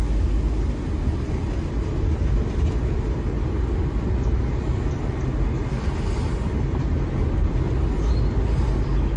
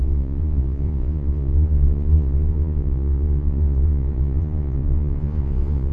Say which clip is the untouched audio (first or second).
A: first